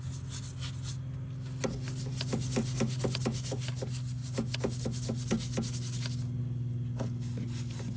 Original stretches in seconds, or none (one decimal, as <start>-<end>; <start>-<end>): 0.0-8.0